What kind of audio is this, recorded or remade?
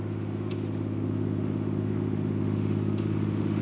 remade